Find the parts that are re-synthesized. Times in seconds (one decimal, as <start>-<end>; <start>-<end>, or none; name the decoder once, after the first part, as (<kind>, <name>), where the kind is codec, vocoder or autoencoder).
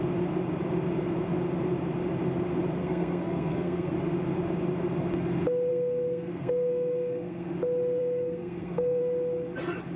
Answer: 2.8-3.9 (codec, SNAC); 5.7-7.5; 8.0-9.0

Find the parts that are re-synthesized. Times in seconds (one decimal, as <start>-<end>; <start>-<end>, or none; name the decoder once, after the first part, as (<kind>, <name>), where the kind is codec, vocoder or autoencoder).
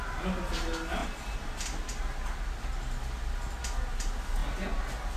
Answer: 1.0-1.6 (vocoder, BigVGAN v2)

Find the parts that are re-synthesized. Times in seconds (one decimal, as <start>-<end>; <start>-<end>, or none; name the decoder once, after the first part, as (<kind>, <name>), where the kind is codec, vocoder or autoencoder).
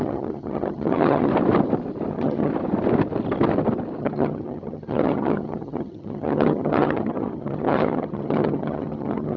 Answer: 0.0-1.3 (vocoder, HiFi-GAN); 2.1-2.5; 4.0-9.4